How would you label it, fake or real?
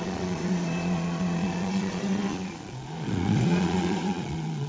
fake